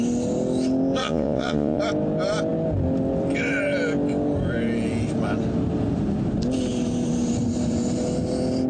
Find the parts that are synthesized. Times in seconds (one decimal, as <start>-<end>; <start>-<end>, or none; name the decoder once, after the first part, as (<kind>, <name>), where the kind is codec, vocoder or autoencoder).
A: 1.0-1.8 (vocoder, Vocos)